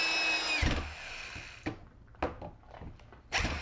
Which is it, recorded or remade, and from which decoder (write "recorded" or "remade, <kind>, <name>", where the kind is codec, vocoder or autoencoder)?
recorded